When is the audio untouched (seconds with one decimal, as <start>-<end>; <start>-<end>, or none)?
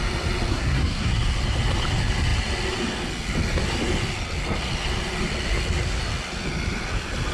0.0-0.5; 1.1-7.3